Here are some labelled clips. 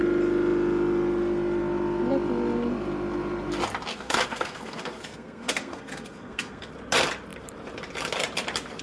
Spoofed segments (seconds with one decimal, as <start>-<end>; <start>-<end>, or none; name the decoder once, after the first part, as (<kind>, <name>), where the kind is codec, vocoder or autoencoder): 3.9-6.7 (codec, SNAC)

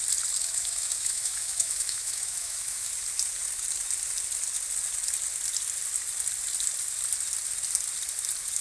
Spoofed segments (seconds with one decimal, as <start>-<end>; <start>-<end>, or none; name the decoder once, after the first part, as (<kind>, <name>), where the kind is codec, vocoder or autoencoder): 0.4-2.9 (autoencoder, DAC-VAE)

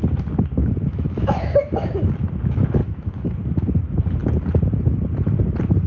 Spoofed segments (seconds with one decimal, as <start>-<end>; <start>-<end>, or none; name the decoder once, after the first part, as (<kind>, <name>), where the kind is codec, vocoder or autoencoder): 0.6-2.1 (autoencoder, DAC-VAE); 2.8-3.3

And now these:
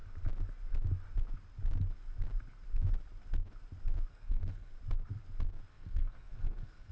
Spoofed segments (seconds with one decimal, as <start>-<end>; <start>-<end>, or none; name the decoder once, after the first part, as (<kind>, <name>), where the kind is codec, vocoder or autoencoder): 4.1-4.7 (codec, SNAC); 5.7-6.9

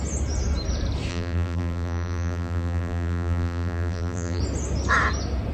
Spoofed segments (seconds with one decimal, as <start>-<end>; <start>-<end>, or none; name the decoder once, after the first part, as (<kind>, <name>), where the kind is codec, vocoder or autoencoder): 1.1-4.4 (vocoder, BigVGAN v2)

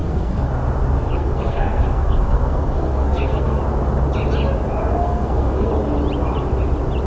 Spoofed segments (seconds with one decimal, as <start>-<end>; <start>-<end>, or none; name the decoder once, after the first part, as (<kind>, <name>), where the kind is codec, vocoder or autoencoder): 0.0-0.5 (codec, SNAC); 1.1-3.6; 5.0-5.7

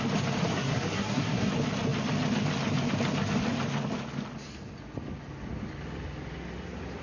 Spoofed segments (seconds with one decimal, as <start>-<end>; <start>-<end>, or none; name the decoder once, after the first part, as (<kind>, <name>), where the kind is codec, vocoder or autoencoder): 0.5-1.5 (codec, SNAC)

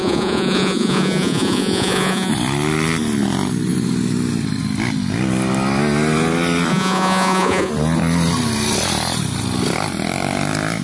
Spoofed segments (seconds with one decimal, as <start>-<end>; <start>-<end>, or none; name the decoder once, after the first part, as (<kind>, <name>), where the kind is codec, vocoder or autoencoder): 0.0-2.3 (vocoder, Vocos); 6.7-7.7